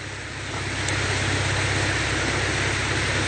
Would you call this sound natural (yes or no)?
yes